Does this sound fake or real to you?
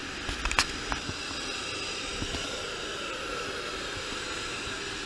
real